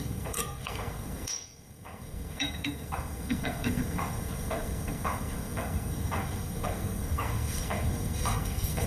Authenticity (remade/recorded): remade